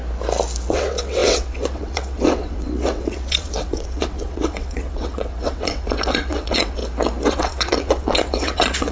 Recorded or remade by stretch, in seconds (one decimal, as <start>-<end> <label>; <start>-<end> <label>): 0.0-0.7 recorded; 0.7-6.8 remade; 6.8-7.3 recorded; 7.3-8.9 remade